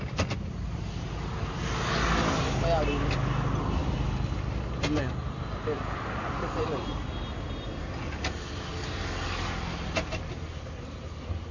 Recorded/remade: recorded